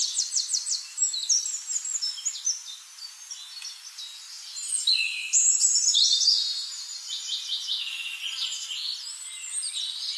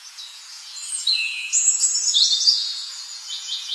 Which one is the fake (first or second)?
second